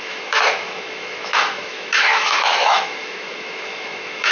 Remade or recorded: remade